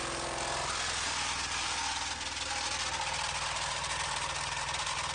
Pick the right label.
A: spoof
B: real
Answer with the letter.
B